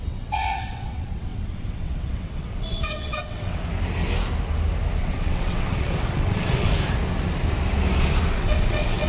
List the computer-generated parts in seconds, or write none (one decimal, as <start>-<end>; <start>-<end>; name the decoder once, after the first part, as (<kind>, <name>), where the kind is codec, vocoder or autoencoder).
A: 0.0-3.6 (vocoder, WaveNeXt); 5.0-6.7; 8.2-9.1